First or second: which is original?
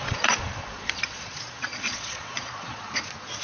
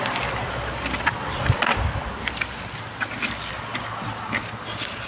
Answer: second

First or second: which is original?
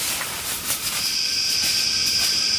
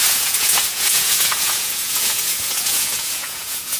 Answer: first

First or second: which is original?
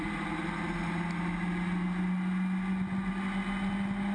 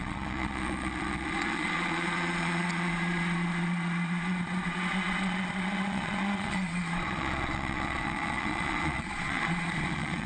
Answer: first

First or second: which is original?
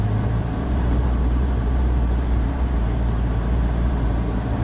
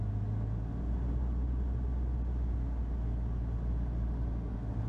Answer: second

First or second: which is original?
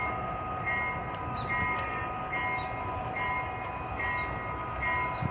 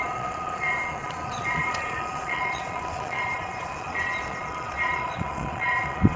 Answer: first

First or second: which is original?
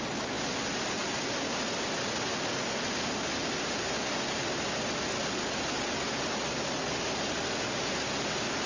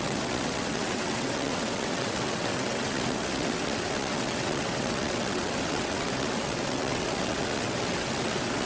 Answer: first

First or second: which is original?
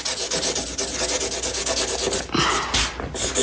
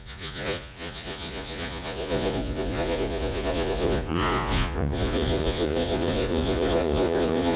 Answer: first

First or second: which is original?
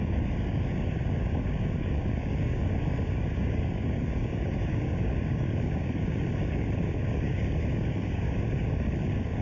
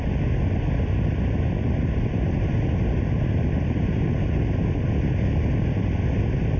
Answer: second